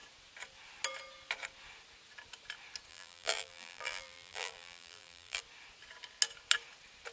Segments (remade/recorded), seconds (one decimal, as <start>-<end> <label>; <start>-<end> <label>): 0.0-2.9 recorded; 2.9-5.4 remade; 5.4-7.1 recorded